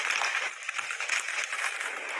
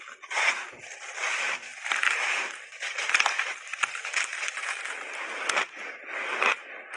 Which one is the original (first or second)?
first